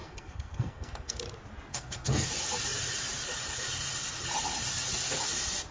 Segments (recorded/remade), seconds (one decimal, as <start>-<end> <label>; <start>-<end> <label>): 0.0-1.2 remade; 1.2-1.7 recorded; 1.7-2.3 remade; 2.3-5.7 recorded